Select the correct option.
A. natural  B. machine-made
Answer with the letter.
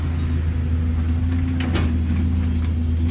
A